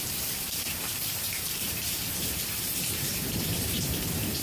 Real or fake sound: fake